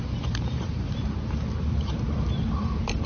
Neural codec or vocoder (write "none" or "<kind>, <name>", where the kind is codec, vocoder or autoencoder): vocoder, BigVGAN v2